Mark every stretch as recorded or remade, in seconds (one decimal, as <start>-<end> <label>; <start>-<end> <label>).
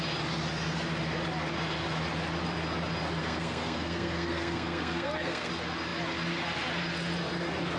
0.0-3.2 recorded; 3.2-5.5 remade; 5.5-7.8 recorded